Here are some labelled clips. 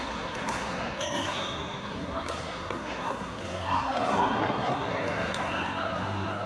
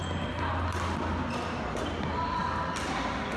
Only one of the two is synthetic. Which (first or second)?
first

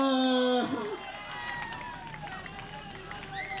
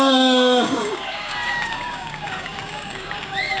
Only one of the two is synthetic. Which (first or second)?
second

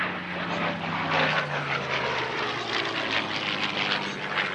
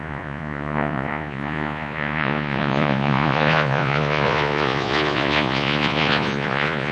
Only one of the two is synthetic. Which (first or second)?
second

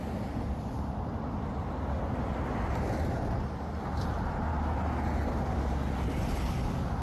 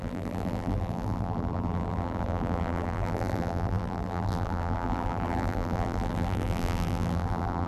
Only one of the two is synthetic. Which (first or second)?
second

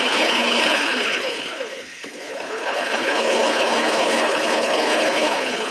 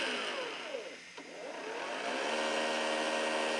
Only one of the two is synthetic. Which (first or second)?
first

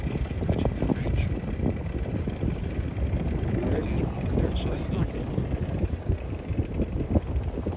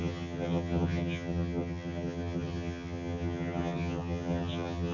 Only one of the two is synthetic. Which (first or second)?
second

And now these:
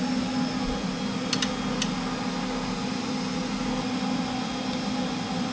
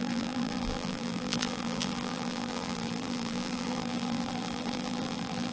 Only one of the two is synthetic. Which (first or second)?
second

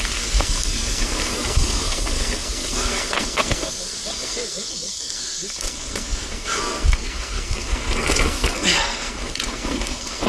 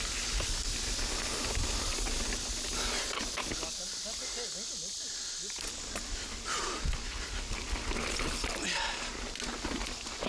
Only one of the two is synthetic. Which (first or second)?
first